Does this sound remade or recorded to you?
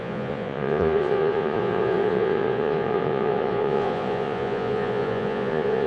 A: remade